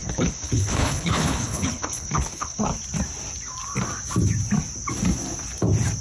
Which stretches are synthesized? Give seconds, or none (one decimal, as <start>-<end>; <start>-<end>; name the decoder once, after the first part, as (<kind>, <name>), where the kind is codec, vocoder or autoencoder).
0.0-2.7 (codec, HILCodec)